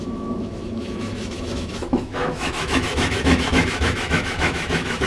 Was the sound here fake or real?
fake